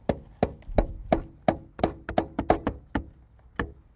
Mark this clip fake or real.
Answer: real